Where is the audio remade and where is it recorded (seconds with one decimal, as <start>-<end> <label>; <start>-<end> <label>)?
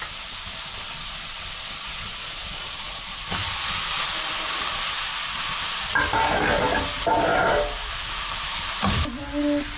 0.0-9.8 recorded